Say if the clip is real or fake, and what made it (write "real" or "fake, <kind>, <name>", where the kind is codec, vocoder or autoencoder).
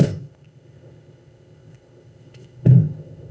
fake, codec, ZipCodec